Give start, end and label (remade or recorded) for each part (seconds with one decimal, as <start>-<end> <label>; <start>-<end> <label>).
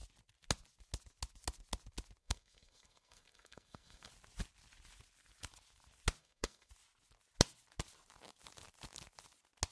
0.0-2.2 recorded; 2.2-4.1 remade; 4.1-6.2 recorded; 6.2-6.7 remade; 6.7-9.7 recorded